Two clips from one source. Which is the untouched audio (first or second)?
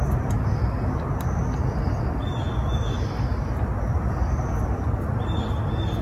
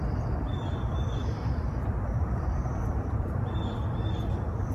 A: first